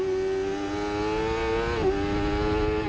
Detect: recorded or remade recorded